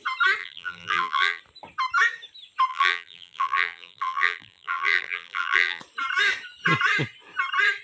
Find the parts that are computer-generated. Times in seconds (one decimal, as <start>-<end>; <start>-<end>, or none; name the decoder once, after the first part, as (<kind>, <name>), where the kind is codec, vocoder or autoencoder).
0.4-1.4 (vocoder, BigVGAN v2); 2.7-5.8